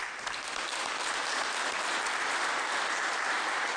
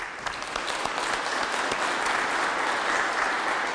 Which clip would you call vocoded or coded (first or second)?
first